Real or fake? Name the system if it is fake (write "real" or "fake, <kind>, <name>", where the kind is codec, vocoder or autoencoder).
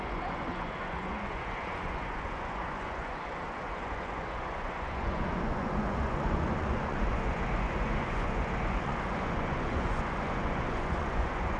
fake, vocoder, Vocos